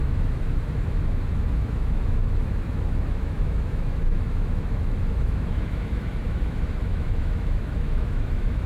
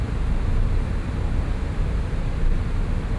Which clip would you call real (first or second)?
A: second